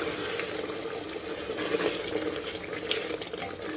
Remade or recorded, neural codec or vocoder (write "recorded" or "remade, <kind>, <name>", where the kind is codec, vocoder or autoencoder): recorded